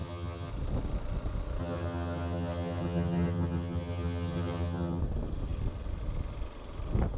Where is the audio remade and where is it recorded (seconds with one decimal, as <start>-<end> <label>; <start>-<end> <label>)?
0.0-0.5 remade; 0.5-1.6 recorded; 1.6-5.0 remade; 5.0-7.2 recorded